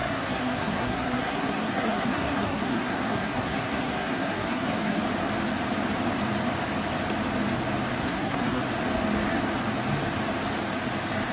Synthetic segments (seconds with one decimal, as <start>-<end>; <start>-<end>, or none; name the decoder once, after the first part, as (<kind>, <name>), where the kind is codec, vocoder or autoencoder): 0.0-5.0 (codec, SNAC); 8.0-8.6